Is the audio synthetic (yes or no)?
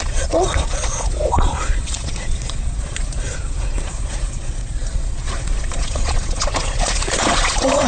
yes